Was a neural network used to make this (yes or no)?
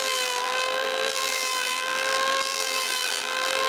yes